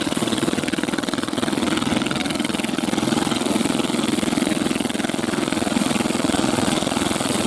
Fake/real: fake